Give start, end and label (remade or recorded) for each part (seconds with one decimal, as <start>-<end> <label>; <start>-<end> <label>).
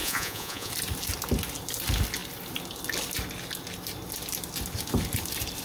0.0-0.7 remade; 0.7-5.6 recorded